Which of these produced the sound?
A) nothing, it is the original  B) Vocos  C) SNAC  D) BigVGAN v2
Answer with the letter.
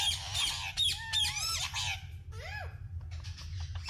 A